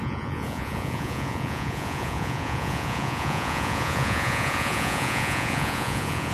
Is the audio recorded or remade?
remade